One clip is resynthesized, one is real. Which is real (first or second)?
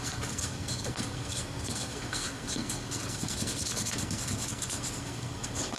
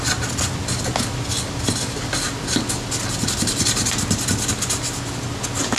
second